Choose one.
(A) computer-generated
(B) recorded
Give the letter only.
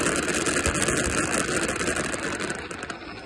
B